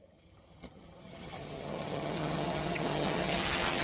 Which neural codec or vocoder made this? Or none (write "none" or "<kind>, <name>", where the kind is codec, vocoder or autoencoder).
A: vocoder, HiFi-GAN